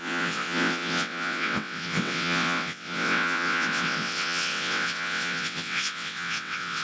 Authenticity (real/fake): fake